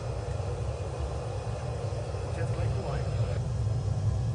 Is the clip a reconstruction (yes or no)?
no